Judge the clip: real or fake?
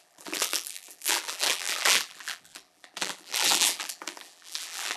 fake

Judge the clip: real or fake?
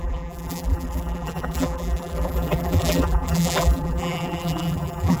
fake